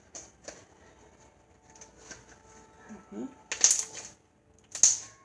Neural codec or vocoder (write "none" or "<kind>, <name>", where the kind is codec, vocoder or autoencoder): none